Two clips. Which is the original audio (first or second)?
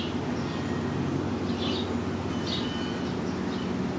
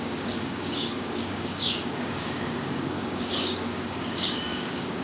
first